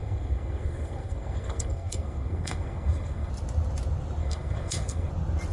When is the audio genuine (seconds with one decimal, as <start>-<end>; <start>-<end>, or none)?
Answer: 3.3-4.2; 5.1-5.5